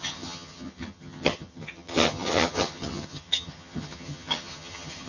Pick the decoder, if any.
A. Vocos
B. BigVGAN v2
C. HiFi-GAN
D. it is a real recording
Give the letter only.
C